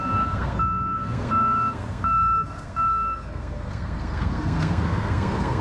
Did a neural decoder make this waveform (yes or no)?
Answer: yes